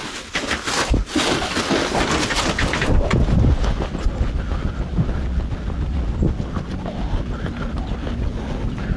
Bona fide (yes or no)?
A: yes